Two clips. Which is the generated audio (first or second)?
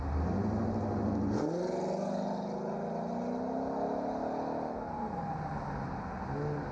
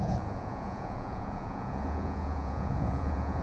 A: second